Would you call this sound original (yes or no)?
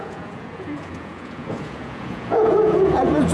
no